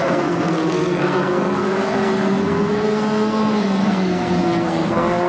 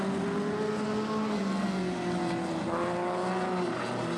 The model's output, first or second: first